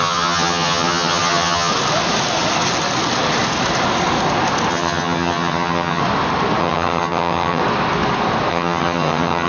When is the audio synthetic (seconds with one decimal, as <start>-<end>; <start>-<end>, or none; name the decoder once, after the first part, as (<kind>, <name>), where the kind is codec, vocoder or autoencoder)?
0.0-1.7 (vocoder, HiFi-GAN); 4.7-6.0; 6.6-7.6; 8.5-9.5